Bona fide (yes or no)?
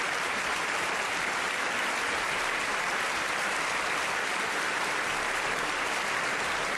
no